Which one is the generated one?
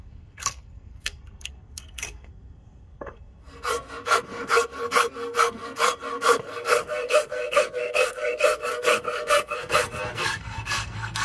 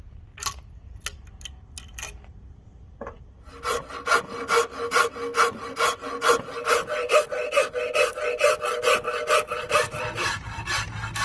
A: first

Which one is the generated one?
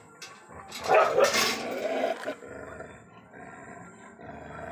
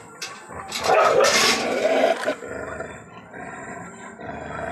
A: second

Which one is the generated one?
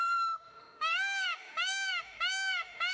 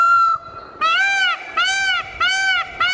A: first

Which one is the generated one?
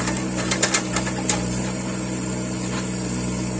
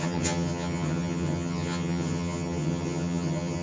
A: second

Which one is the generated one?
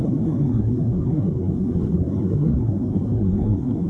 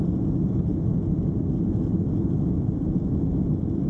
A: first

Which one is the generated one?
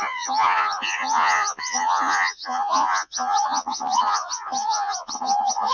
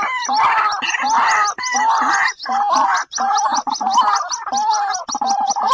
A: first